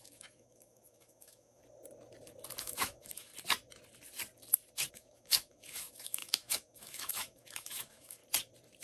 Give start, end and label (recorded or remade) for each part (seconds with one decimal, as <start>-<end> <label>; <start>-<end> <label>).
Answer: 0.0-1.6 remade; 1.6-2.6 recorded; 2.6-3.3 remade; 3.3-4.9 recorded; 4.9-8.2 remade; 8.2-8.8 recorded